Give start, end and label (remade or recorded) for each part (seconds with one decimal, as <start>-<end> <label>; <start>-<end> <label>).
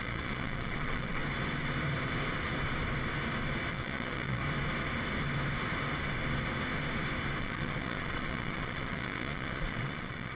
0.0-1.2 remade; 1.2-3.7 recorded; 3.7-4.4 remade; 4.4-7.4 recorded; 7.4-10.3 remade